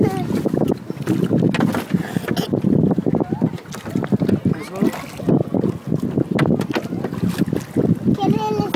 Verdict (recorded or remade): recorded